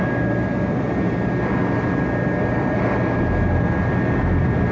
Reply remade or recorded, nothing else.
recorded